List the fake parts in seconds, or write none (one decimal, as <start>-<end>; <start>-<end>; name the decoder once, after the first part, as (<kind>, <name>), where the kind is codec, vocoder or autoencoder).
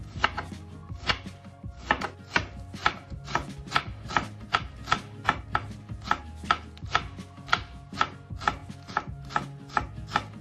none